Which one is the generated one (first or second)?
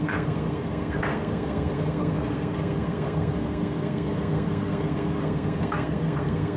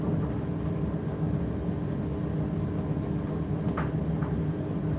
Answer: first